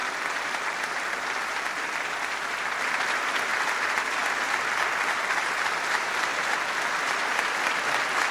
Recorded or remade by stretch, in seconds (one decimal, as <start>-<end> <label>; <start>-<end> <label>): 0.0-3.5 remade; 3.5-5.3 recorded; 5.3-6.3 remade; 6.3-8.3 recorded